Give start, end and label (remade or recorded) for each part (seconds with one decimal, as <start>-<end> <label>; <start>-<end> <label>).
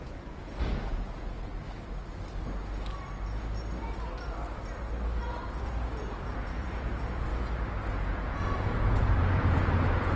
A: 0.0-1.5 remade; 1.5-5.6 recorded; 5.6-7.3 remade; 7.3-7.9 recorded; 7.9-10.2 remade